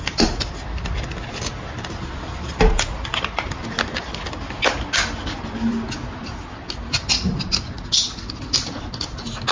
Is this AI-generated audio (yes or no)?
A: no